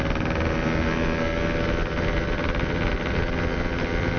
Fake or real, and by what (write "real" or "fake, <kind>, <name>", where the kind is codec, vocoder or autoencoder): real